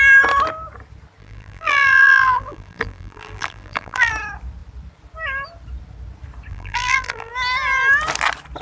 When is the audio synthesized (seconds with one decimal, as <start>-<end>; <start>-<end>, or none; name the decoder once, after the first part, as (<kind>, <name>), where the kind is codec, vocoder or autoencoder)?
1.2-4.1 (vocoder, BigVGAN v2); 6.5-7.3